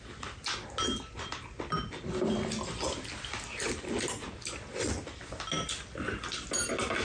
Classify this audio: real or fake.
real